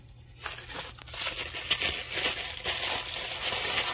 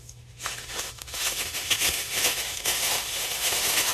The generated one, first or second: second